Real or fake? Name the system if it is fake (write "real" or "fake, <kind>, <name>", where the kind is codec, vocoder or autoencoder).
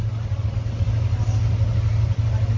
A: real